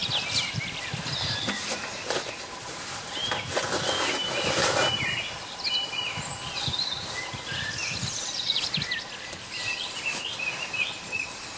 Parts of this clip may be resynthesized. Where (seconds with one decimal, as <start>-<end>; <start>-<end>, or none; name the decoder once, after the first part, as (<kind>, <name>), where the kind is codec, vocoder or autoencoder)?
0.5-3.2 (vocoder, BigVGAN v2); 4.4-11.6